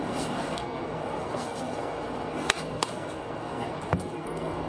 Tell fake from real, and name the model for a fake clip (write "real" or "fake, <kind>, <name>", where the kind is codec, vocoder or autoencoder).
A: fake, codec, SNAC